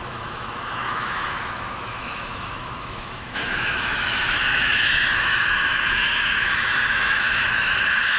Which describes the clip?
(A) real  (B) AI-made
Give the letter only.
B